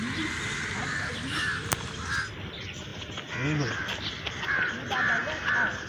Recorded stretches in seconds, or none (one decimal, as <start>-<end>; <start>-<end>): 0.0-5.9